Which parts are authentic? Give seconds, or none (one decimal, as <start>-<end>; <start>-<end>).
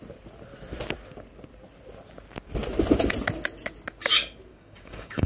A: 0.0-4.5